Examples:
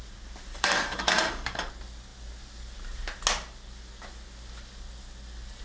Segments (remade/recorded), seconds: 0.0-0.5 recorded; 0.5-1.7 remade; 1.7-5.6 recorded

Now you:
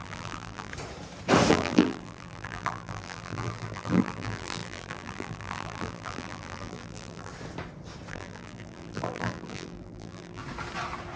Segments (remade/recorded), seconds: 0.0-0.7 remade; 0.7-1.5 recorded; 1.5-7.3 remade; 7.3-8.1 recorded; 8.1-10.4 remade; 10.4-11.2 recorded

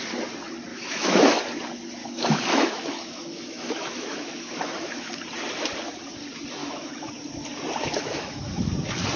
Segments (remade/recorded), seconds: 0.0-0.7 recorded; 0.7-1.4 remade; 1.4-2.0 recorded; 2.0-5.1 remade; 5.1-6.6 recorded; 6.6-7.1 remade; 7.1-7.8 recorded; 7.8-8.7 remade; 8.7-9.2 recorded

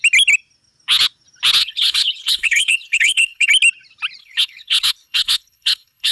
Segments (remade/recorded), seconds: 0.0-1.6 recorded; 1.6-3.5 remade; 3.5-4.2 recorded; 4.2-6.1 remade

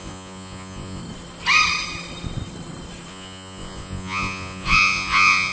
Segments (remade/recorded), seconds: 0.0-1.0 remade; 1.0-3.1 recorded; 3.1-5.5 remade

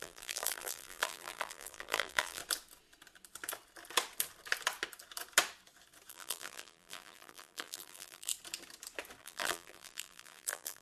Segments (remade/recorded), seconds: 0.0-2.4 remade; 2.4-6.1 recorded; 6.1-8.3 remade; 8.3-9.2 recorded; 9.2-10.8 remade

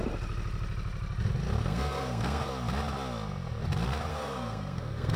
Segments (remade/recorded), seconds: 0.0-1.6 recorded; 1.6-2.5 remade; 2.5-4.1 recorded; 4.1-5.2 remade